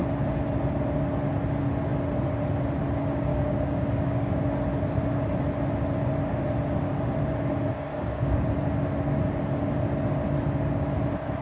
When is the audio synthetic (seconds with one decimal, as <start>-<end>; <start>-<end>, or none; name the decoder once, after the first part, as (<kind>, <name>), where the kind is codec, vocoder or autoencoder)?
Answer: 3.3-4.4 (codec, DAC); 7.9-8.5